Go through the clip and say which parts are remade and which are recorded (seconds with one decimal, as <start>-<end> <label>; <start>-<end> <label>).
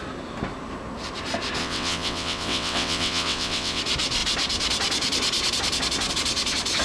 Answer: 0.0-1.6 recorded; 1.6-3.8 remade; 3.8-6.8 recorded